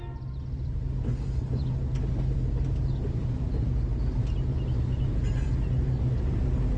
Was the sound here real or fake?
real